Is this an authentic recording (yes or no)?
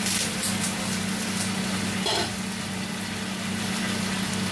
yes